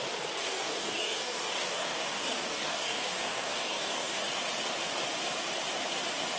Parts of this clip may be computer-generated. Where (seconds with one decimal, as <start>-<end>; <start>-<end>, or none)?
0.4-4.2